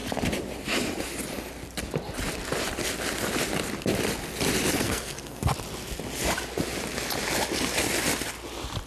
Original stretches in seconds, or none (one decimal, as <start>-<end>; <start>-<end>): 0.0-4.7; 5.5-8.9